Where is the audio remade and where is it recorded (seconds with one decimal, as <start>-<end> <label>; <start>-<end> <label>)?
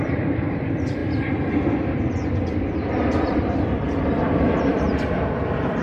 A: 0.0-5.8 remade